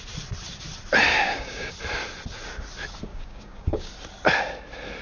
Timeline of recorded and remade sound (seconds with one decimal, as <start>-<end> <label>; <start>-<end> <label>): 0.0-1.1 recorded; 1.1-1.7 remade; 1.7-3.1 recorded; 3.1-3.9 remade; 3.9-5.0 recorded